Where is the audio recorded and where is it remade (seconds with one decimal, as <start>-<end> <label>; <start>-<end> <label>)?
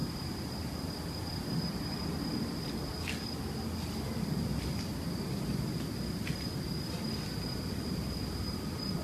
0.0-9.0 recorded